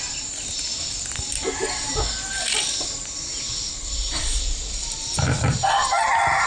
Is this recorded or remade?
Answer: recorded